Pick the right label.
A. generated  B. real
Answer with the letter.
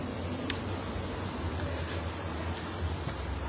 B